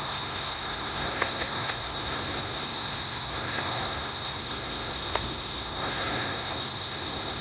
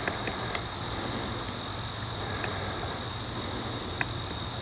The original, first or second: second